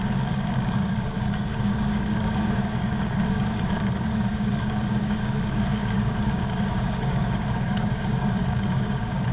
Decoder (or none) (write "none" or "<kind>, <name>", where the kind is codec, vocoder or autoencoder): codec, DAC